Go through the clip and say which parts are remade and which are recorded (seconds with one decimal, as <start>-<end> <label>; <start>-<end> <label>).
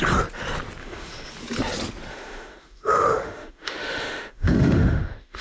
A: 0.0-0.8 recorded; 0.8-1.3 remade; 1.3-2.1 recorded; 2.1-5.4 remade